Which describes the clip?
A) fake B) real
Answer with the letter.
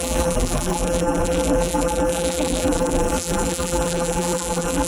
A